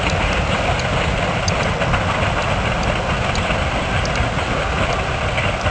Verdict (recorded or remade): recorded